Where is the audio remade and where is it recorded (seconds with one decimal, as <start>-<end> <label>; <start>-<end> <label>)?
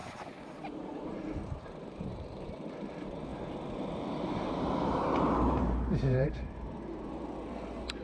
0.0-3.3 remade; 3.3-4.0 recorded; 4.0-8.0 remade